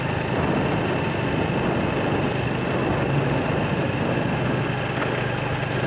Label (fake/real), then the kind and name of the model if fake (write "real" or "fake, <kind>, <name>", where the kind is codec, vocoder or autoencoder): real